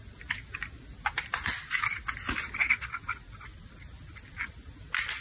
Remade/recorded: recorded